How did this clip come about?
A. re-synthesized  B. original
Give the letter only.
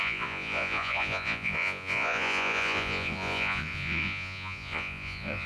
A